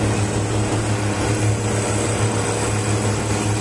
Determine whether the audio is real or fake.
real